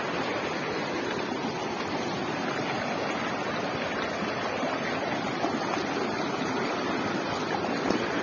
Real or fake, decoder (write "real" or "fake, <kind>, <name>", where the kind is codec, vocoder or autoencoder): real